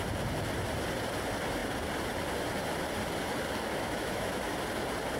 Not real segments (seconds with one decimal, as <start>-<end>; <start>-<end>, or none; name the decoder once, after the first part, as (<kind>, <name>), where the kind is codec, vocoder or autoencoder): 3.7-4.4 (autoencoder, DAC-VAE)